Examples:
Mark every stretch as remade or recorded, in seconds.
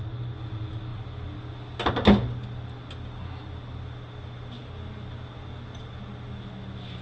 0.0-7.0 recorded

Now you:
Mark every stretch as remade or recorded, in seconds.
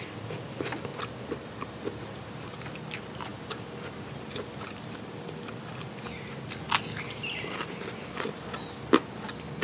0.0-9.6 recorded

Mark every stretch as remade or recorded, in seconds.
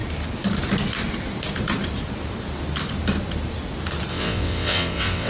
0.0-4.1 recorded; 4.1-5.3 remade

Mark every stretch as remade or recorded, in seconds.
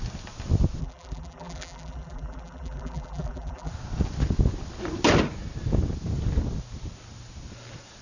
0.0-0.8 recorded; 0.8-3.7 remade; 3.7-8.0 recorded